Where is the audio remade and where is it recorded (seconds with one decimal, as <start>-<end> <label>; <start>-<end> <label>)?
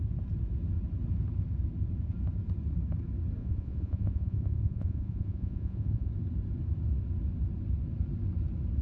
0.0-3.4 recorded; 3.4-6.1 remade; 6.1-8.8 recorded